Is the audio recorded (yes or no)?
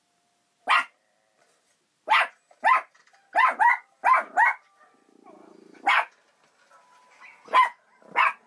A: yes